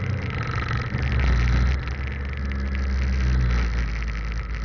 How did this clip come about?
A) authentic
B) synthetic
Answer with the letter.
A